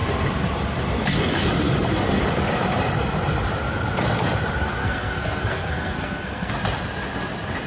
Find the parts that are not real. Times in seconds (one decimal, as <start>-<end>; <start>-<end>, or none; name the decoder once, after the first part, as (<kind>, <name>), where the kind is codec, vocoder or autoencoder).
4.8-6.5 (codec, SNAC)